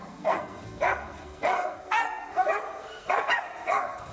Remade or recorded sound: remade